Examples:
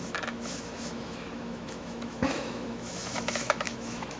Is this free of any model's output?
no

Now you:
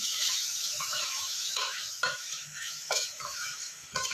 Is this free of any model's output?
no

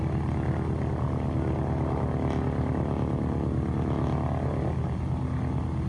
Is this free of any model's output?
yes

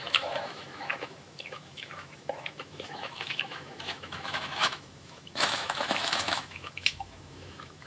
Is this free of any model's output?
no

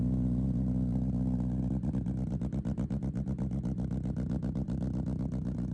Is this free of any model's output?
yes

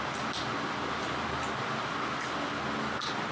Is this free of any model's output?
yes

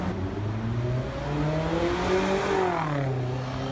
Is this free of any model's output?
yes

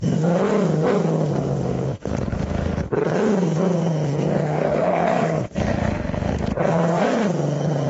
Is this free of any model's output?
no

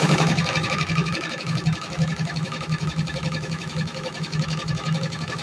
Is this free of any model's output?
no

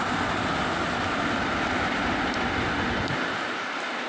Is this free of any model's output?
yes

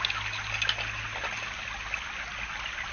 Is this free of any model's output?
yes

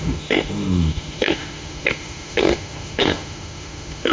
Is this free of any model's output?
no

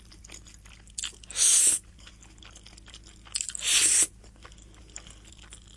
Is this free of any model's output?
yes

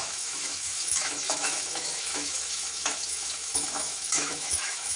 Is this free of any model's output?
no